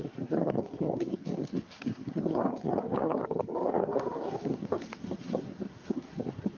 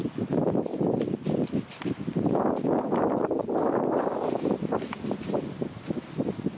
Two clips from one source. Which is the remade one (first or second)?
first